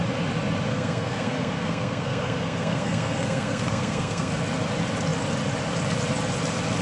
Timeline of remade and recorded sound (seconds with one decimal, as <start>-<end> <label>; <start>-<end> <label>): 0.0-0.7 recorded; 0.7-4.3 remade; 4.3-6.8 recorded

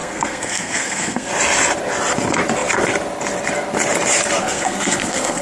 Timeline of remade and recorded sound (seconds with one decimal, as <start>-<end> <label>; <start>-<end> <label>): 0.0-1.3 remade; 1.3-4.4 recorded; 4.4-5.4 remade

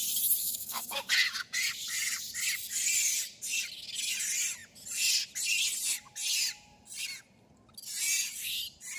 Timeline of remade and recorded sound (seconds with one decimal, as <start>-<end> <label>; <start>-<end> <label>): 0.0-0.4 recorded; 0.4-1.1 remade; 1.1-9.0 recorded

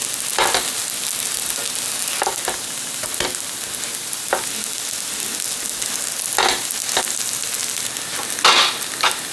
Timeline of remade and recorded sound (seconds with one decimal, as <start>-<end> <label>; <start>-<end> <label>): 0.0-9.3 recorded